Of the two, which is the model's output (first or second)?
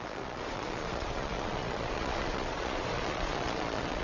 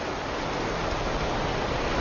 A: first